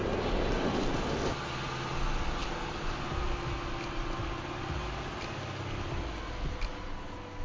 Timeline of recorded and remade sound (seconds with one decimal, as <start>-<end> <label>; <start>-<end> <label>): 0.0-7.4 recorded